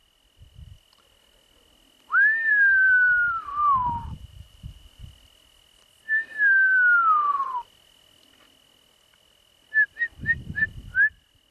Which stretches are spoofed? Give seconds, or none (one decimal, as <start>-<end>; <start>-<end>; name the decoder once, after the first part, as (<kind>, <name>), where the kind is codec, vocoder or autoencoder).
3.8-5.0 (vocoder, BigVGAN v2)